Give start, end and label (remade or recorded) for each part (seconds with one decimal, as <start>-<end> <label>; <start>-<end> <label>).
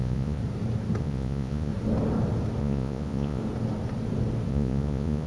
0.0-0.4 remade; 0.4-1.0 recorded; 1.0-1.7 remade; 1.7-2.6 recorded; 2.6-3.4 remade; 3.4-4.5 recorded; 4.5-5.3 remade